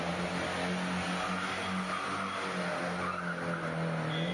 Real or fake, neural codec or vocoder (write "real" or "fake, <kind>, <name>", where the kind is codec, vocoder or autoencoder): real